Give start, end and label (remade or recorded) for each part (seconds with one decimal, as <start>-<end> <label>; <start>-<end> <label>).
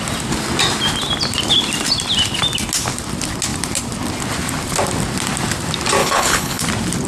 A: 0.0-6.0 recorded; 6.0-6.6 remade; 6.6-7.1 recorded